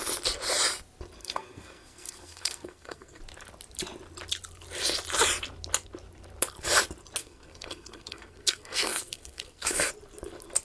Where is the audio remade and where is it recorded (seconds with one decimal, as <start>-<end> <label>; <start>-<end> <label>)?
0.0-1.2 recorded; 1.2-3.2 remade; 3.2-7.2 recorded; 7.2-9.9 remade; 9.9-10.6 recorded